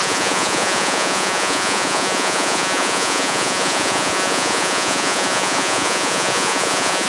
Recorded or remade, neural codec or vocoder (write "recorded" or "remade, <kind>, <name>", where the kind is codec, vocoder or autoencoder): remade, vocoder, Vocos